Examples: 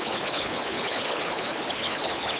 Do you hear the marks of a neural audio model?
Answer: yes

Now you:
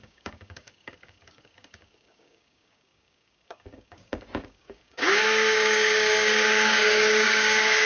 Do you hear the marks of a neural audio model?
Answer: yes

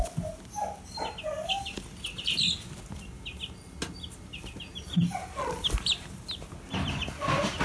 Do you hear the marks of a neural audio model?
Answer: no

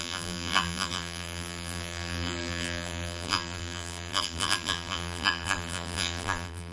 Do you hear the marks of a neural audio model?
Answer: yes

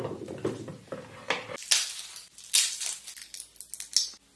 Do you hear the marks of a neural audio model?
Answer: no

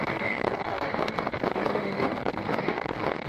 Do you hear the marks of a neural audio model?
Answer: yes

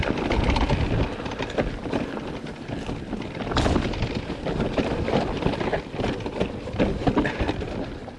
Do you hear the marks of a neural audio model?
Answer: no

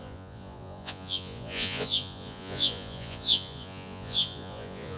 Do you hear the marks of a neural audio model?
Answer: yes